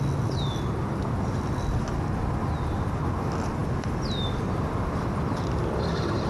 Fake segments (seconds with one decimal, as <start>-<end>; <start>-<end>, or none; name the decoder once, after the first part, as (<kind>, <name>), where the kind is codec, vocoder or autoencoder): none